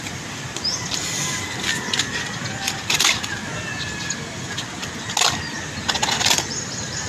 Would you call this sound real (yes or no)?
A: yes